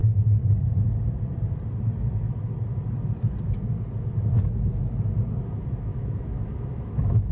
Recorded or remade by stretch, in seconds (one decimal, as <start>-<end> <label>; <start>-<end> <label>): 0.0-5.9 recorded; 5.9-7.3 remade